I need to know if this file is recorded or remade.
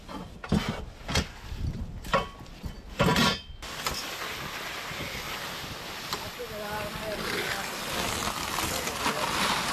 recorded